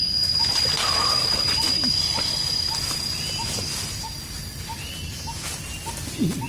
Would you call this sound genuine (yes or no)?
yes